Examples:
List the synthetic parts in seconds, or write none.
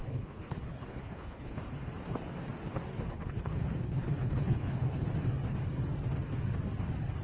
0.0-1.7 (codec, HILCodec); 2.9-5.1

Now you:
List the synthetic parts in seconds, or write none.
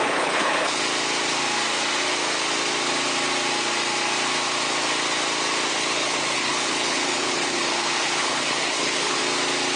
0.0-0.8 (codec, HILCodec); 5.7-9.2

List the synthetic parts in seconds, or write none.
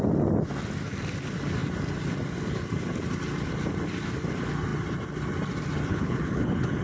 5.9-6.8 (codec, HILCodec)